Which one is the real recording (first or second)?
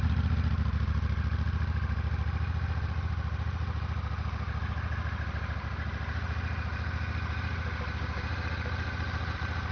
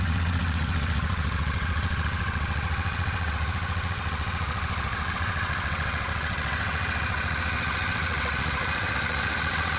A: first